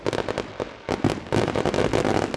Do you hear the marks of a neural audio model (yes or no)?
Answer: no